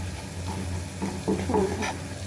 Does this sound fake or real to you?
real